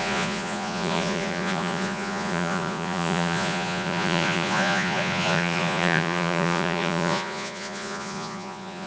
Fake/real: fake